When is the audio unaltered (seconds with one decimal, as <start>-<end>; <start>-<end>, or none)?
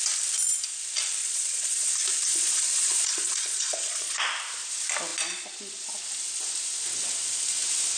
0.0-1.2; 1.9-2.3; 4.2-8.0